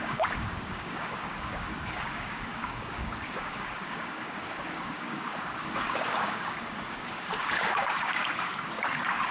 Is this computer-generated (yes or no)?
yes